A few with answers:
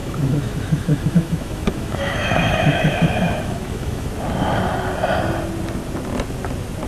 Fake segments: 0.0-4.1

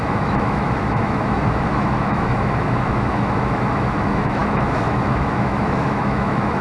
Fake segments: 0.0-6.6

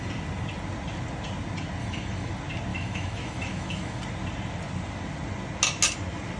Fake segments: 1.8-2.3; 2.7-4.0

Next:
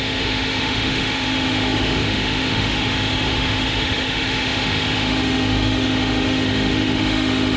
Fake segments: 0.0-7.6

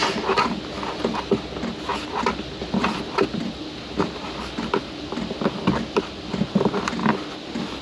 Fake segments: none